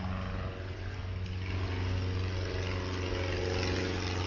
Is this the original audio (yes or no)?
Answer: yes